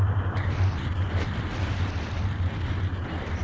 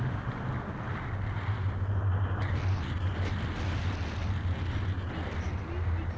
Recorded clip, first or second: second